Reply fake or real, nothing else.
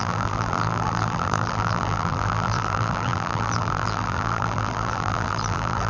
fake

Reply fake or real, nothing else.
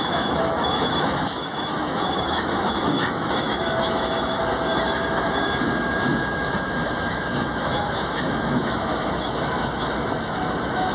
fake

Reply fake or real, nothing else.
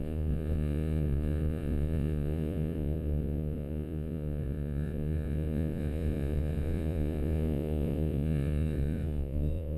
fake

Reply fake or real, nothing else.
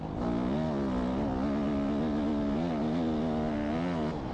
real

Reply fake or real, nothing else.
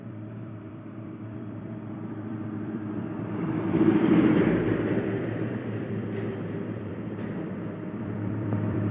fake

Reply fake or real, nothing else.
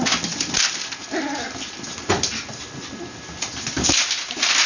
real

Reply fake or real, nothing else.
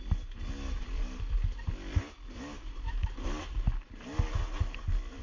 real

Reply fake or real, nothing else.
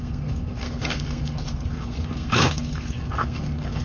fake